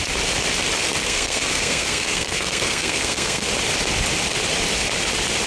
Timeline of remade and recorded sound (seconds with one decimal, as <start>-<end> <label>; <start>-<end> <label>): 0.0-1.0 recorded; 1.0-3.5 remade; 3.5-5.5 recorded